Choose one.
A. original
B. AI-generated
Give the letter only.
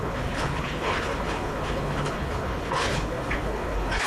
B